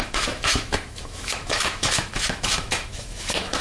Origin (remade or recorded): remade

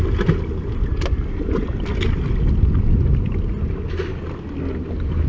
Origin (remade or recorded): recorded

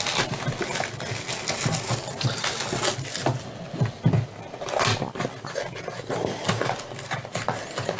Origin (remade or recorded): recorded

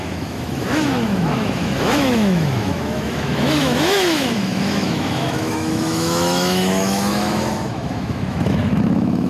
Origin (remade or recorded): remade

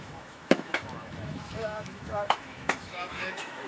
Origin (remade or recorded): remade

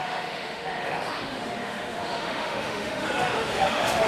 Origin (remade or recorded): remade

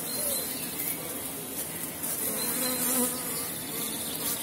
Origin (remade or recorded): recorded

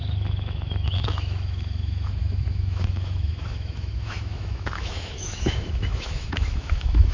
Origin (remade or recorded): remade